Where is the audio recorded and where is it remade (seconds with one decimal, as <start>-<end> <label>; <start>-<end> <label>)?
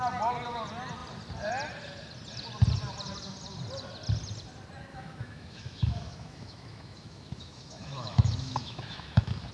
0.0-4.9 recorded; 4.9-9.5 remade